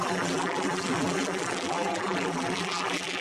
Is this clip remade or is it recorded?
remade